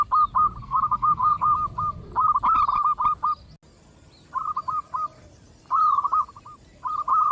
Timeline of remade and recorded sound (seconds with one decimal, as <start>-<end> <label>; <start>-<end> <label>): 0.0-0.6 recorded; 0.6-1.4 remade; 1.4-7.3 recorded

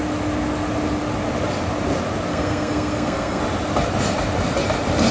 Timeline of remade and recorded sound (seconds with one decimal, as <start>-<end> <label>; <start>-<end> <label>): 0.0-2.3 recorded; 2.3-3.4 remade; 3.4-5.1 recorded

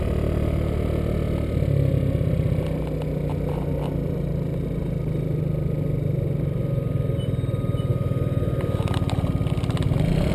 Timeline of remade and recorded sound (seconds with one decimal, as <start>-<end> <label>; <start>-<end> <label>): 0.0-10.3 recorded

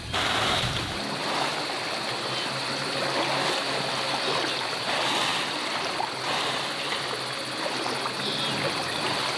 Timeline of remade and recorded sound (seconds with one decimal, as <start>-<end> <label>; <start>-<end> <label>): 0.0-9.4 recorded

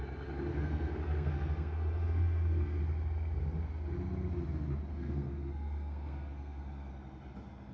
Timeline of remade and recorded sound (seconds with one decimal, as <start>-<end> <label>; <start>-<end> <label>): 0.0-0.5 recorded; 0.5-2.8 remade; 2.8-4.9 recorded; 4.9-6.9 remade; 6.9-7.7 recorded

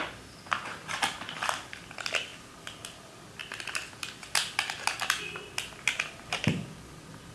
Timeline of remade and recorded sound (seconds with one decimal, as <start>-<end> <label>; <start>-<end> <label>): 0.0-7.3 recorded

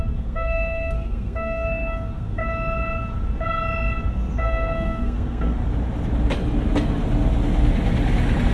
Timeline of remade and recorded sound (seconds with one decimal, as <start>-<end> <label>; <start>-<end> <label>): 0.0-2.4 remade; 2.4-4.1 recorded; 4.1-5.6 remade; 5.6-8.5 recorded

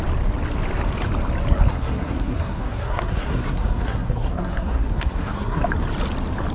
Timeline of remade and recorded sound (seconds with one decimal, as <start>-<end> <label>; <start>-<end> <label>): 0.0-1.7 recorded; 1.7-5.6 remade; 5.6-6.5 recorded